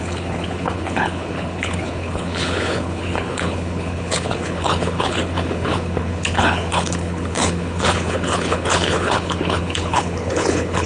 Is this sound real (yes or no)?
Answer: no